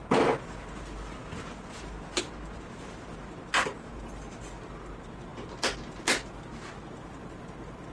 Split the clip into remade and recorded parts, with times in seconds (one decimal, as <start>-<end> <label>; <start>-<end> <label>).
0.0-7.9 recorded